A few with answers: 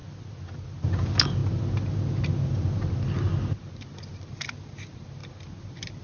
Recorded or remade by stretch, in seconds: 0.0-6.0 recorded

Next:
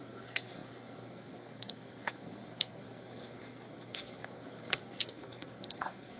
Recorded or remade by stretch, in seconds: 0.0-6.2 remade

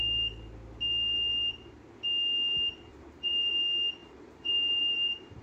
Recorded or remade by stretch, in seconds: 0.0-2.9 recorded; 2.9-3.6 remade; 3.6-4.0 recorded; 4.0-5.4 remade